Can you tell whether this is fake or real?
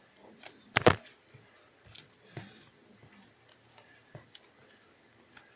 real